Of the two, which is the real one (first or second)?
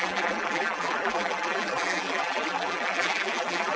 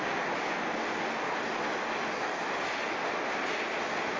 second